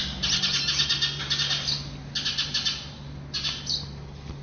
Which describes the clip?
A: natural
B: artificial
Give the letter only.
A